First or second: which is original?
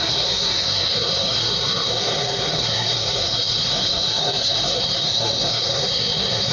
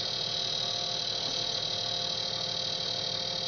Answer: second